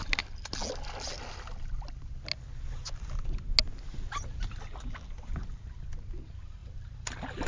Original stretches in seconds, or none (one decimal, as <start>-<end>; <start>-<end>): 0.0-7.5